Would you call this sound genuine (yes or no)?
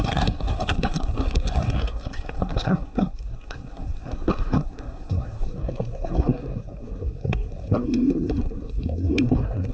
no